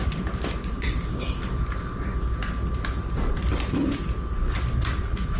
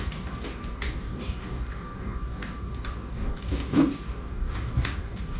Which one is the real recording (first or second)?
first